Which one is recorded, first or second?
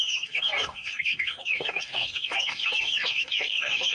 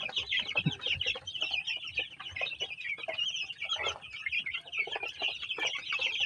second